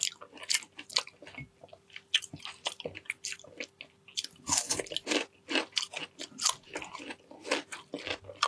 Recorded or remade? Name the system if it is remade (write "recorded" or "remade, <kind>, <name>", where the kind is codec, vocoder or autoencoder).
recorded